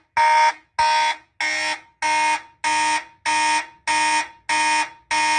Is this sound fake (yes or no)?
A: no